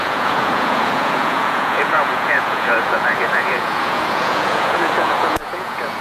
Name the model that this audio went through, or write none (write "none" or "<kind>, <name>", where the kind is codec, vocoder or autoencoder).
vocoder, Vocos